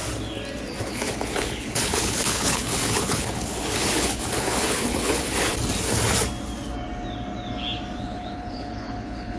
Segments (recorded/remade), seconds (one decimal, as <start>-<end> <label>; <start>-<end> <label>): 0.0-0.8 recorded; 0.8-5.5 remade; 5.5-8.0 recorded; 8.0-9.4 remade